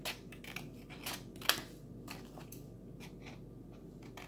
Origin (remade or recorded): recorded